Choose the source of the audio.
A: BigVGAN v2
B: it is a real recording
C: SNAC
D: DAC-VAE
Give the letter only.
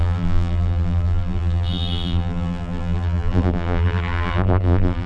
A